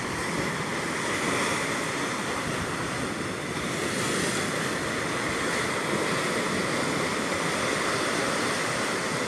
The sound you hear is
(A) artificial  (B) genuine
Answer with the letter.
B